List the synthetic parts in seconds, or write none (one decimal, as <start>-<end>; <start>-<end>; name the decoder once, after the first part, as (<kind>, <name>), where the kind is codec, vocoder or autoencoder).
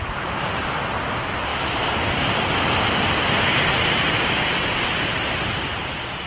none